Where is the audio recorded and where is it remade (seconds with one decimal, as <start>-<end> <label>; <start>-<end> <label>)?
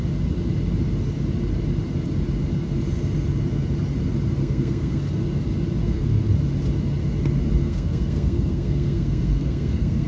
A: 0.0-4.4 recorded; 4.4-5.0 remade; 5.0-5.8 recorded; 5.8-6.3 remade; 6.3-7.6 recorded; 7.6-10.1 remade